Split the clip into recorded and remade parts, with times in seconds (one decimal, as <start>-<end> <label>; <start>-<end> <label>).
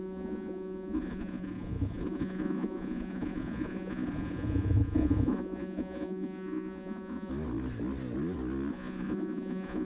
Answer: 0.0-7.3 remade; 7.3-8.7 recorded; 8.7-9.8 remade